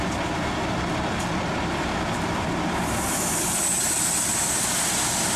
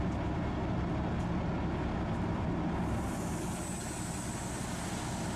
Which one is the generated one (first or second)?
first